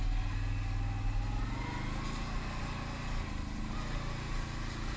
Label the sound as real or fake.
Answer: real